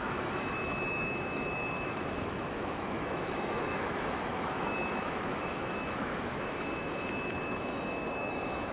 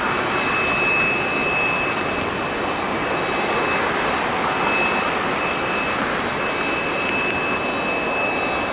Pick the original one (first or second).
second